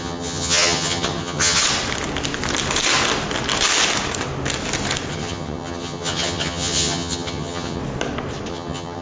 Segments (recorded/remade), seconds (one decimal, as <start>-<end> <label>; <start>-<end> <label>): 0.0-1.6 remade; 1.6-5.1 recorded; 5.1-7.8 remade; 7.8-8.5 recorded; 8.5-9.0 remade